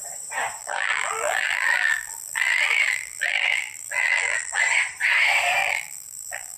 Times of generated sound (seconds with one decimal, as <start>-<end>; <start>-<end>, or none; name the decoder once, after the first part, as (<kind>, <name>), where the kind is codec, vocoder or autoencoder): 0.6-4.6 (vocoder, BigVGAN v2); 5.6-6.6